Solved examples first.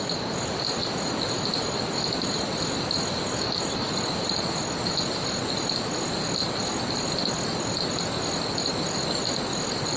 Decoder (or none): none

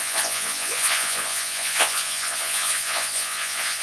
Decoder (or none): vocoder, Vocos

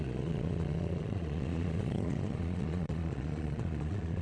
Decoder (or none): vocoder, Vocos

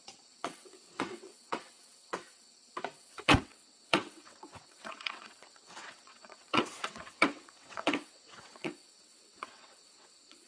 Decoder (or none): vocoder, WaveNeXt